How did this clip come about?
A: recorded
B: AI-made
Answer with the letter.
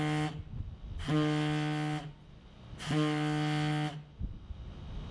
A